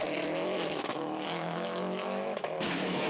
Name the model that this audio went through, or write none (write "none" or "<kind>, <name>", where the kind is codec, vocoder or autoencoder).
autoencoder, DAC-VAE